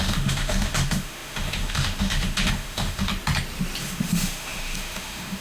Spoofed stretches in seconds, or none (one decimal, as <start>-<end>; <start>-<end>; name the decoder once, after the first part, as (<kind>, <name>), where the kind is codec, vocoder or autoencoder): 0.0-3.1 (autoencoder, DAC-VAE); 3.8-5.4